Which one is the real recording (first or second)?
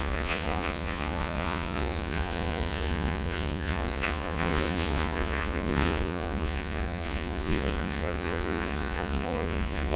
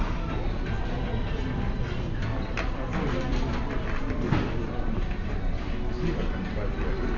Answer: second